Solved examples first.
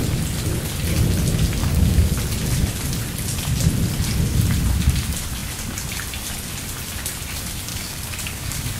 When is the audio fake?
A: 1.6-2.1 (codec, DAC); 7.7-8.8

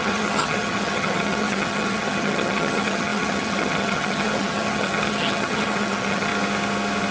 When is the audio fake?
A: 0.0-6.3 (vocoder, HiFi-GAN)

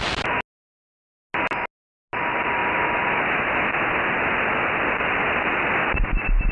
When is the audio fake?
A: none

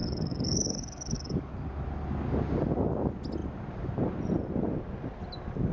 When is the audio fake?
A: 0.0-1.5 (codec, DAC)